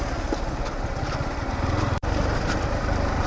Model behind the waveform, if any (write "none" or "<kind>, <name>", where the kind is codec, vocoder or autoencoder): vocoder, BigVGAN v2